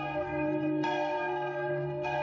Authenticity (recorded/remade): remade